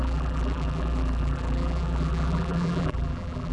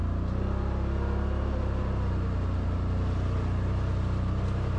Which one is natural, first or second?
second